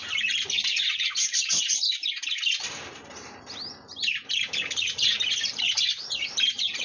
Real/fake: fake